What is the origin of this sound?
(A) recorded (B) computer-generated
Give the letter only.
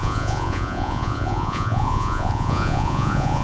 B